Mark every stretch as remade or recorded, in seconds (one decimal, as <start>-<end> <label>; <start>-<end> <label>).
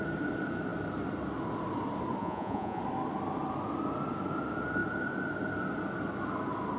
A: 0.0-2.2 recorded; 2.2-2.8 remade; 2.8-6.8 recorded